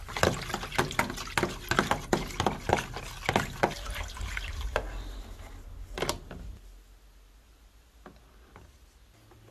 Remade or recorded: recorded